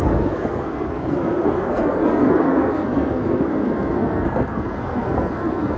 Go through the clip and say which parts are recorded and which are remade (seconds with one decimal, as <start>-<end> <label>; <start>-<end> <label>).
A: 0.0-5.8 remade